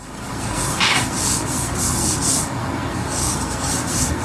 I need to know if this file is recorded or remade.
remade